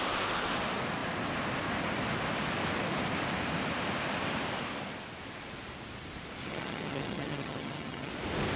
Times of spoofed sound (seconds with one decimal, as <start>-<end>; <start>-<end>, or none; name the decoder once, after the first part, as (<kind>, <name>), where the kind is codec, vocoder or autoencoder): 6.4-8.1 (vocoder, HiFi-GAN)